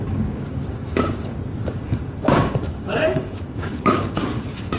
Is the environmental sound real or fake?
fake